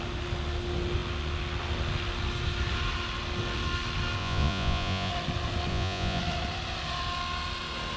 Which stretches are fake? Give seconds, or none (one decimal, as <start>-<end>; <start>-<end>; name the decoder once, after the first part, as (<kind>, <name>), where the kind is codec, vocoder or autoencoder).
4.2-5.1 (vocoder, Vocos); 5.7-6.2

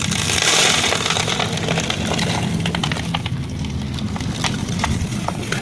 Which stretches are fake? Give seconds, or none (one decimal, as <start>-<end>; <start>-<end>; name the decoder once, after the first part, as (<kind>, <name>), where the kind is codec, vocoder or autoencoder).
4.6-5.6 (vocoder, Vocos)

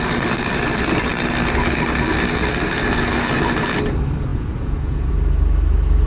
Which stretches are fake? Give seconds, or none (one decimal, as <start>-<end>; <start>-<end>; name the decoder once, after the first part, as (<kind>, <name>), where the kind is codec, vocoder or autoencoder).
4.3-5.1 (vocoder, Vocos)

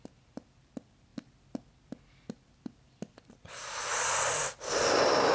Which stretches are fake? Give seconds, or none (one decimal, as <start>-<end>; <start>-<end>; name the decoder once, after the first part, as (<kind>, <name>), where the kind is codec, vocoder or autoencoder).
none

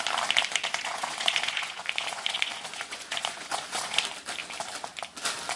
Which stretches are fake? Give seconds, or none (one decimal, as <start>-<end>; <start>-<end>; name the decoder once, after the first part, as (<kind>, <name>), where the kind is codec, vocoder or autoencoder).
0.6-4.0 (vocoder, Vocos)

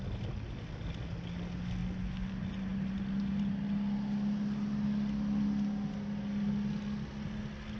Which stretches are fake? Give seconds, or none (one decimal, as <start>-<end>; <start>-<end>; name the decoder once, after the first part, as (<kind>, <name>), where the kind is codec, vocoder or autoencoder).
none

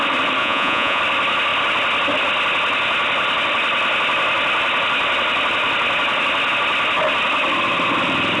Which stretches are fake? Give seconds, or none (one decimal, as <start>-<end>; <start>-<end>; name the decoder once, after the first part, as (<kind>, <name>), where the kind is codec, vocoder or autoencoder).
0.4-1.0 (vocoder, Vocos)